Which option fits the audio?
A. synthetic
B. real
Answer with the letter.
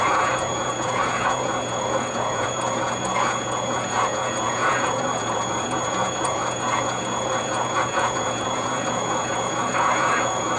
A